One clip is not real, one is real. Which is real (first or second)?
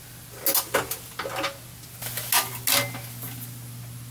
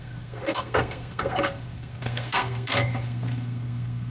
first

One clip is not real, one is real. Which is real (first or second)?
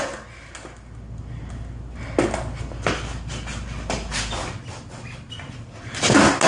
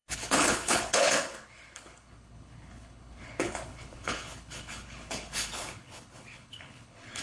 first